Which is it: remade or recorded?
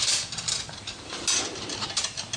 remade